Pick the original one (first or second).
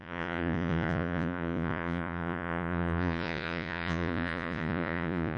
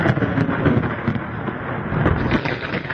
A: second